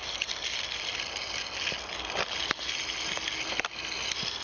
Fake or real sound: real